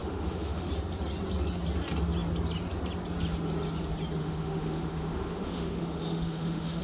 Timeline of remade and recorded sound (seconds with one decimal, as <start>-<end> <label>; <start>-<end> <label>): 0.0-0.7 remade; 0.7-4.2 recorded; 4.2-6.8 remade